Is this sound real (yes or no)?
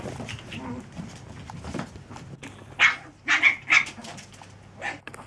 yes